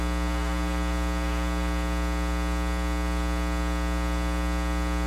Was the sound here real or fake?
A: real